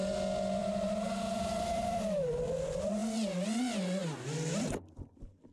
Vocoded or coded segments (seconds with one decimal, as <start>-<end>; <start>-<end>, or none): 0.6-2.0